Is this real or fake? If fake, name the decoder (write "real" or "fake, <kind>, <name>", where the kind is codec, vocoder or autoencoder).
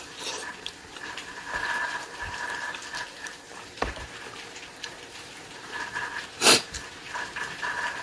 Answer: fake, vocoder, BigVGAN v2